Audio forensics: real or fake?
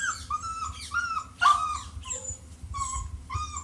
real